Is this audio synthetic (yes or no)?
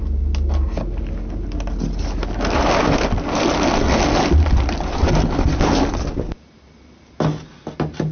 no